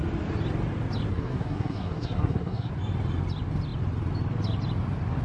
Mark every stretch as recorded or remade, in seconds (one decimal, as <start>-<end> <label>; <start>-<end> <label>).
0.0-1.1 recorded; 1.1-2.7 remade; 2.7-5.2 recorded